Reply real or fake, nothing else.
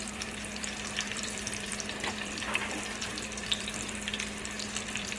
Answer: fake